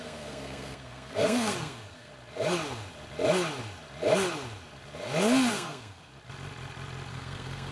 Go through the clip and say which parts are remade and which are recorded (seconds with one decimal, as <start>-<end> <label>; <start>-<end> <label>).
0.0-2.1 remade; 2.1-5.5 recorded; 5.5-6.1 remade; 6.1-7.1 recorded; 7.1-7.7 remade

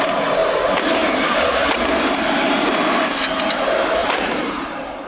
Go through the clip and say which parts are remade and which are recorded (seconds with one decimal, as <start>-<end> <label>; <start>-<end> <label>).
0.0-0.4 recorded; 0.4-1.1 remade; 1.1-4.0 recorded; 4.0-5.1 remade